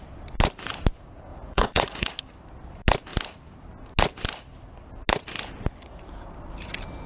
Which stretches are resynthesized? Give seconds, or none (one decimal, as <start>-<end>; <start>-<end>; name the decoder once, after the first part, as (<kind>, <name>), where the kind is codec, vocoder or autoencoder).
1.3-2.1 (vocoder, Vocos)